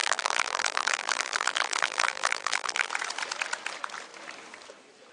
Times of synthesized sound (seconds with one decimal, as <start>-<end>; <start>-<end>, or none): 0.0-2.9